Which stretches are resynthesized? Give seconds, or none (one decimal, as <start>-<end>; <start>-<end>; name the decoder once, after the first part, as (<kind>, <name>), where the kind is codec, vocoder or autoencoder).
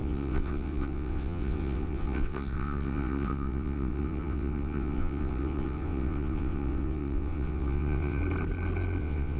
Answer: 0.0-8.2 (vocoder, WaveNeXt); 9.0-9.4